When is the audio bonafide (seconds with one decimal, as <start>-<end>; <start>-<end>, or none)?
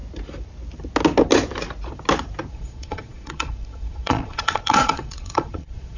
0.0-2.5